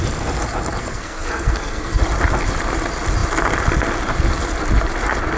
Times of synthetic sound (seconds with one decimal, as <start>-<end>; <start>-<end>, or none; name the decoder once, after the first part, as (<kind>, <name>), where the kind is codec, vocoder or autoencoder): 0.8-2.0 (codec, SNAC)